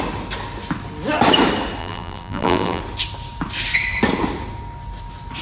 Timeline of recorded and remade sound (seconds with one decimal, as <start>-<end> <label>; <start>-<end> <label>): 0.0-1.8 recorded; 1.8-2.8 remade; 2.8-5.4 recorded